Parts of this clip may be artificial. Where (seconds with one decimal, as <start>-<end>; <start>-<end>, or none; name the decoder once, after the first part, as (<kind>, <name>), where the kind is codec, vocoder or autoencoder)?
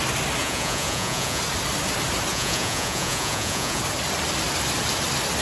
0.4-1.4 (vocoder, Vocos); 2.3-3.8